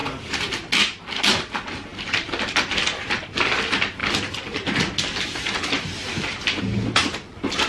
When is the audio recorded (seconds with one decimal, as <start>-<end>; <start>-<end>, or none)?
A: 0.0-1.9; 3.1-7.7